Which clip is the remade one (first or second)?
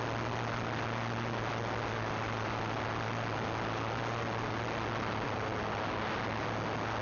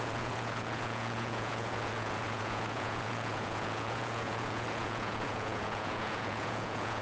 second